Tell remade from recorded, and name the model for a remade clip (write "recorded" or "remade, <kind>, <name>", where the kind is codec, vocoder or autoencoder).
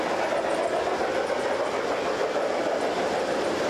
recorded